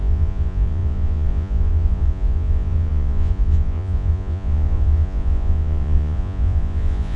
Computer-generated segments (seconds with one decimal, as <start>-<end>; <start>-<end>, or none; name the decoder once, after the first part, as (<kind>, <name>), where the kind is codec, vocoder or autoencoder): 0.0-7.2 (vocoder, Vocos)